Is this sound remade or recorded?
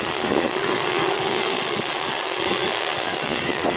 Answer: remade